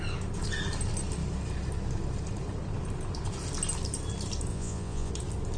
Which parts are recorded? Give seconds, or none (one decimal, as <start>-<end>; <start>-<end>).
0.0-4.5; 5.1-5.6